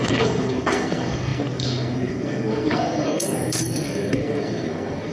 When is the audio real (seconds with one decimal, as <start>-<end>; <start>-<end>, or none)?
none

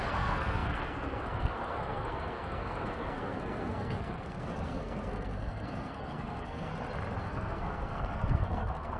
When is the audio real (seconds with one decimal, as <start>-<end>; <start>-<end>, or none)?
6.7-7.2

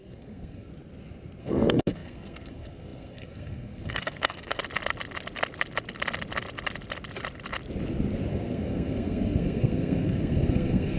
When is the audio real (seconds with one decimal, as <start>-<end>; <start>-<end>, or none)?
0.7-1.4; 4.6-8.3

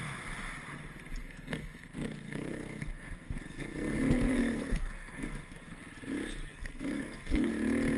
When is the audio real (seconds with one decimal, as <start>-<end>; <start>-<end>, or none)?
0.0-1.2; 5.8-6.5; 7.5-8.0

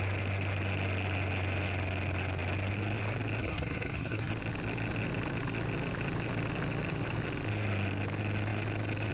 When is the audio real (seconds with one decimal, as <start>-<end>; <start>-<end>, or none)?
0.0-3.4; 4.3-9.1

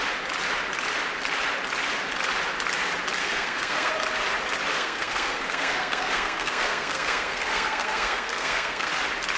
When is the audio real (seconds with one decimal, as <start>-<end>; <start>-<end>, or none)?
0.0-3.2; 3.9-4.7; 8.9-9.4